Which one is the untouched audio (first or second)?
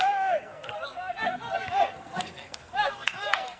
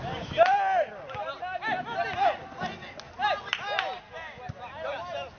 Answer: second